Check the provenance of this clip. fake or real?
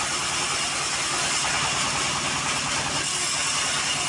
real